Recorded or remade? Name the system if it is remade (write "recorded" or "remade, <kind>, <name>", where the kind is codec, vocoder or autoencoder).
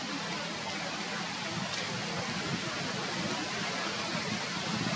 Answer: recorded